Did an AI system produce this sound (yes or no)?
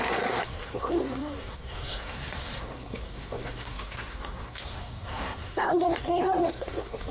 yes